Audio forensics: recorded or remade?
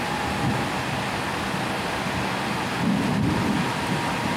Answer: recorded